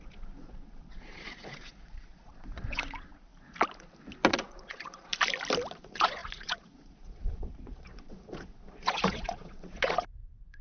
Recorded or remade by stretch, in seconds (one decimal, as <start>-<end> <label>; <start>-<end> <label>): 0.0-3.3 remade; 3.3-4.3 recorded; 4.3-5.1 remade; 5.1-5.8 recorded; 5.8-10.6 remade